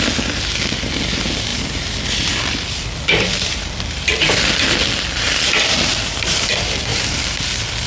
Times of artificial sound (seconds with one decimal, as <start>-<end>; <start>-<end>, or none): 1.5-4.5; 6.9-7.4